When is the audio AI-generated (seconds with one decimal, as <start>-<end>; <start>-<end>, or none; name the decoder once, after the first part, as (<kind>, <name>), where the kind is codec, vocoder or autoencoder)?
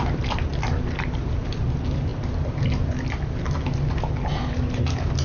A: none